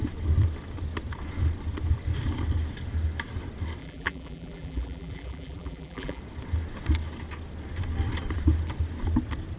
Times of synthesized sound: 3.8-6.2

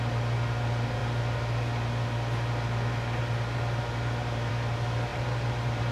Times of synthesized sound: 5.1-5.9

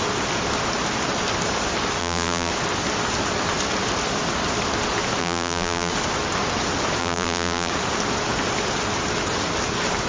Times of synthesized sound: 2.0-2.5; 5.2-5.9; 7.0-7.7

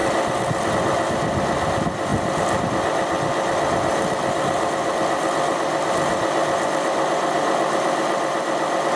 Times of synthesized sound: none

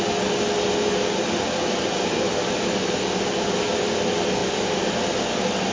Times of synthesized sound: 1.6-2.3; 4.4-5.0

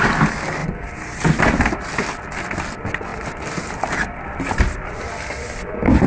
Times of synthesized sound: 0.6-1.9; 3.1-5.0

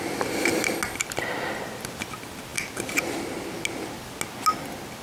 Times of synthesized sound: none

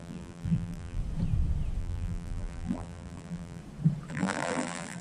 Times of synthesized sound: 0.0-1.0; 1.8-3.6; 4.1-5.0